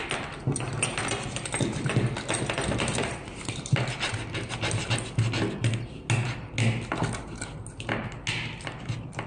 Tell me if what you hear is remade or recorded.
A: recorded